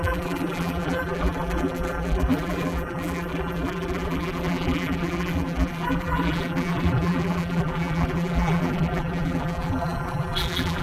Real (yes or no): no